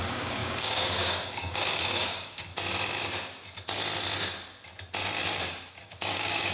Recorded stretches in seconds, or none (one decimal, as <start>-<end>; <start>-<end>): 2.5-5.7